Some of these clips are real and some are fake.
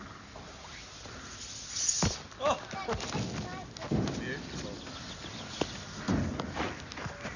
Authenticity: real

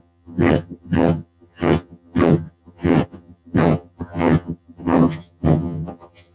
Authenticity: fake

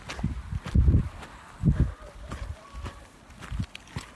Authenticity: real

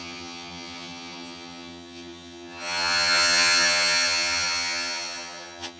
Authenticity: fake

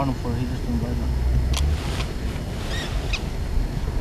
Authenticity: real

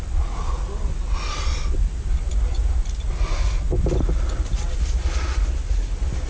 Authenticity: real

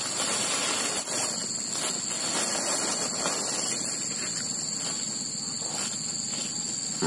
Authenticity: real